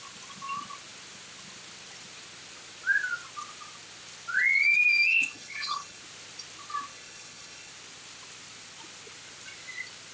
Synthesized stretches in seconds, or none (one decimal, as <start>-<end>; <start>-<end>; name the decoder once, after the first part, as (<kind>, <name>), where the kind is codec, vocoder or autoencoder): 5.1-6.0 (codec, HILCodec); 6.9-7.7